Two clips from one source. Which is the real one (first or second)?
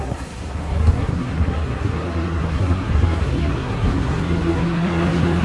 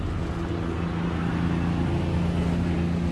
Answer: second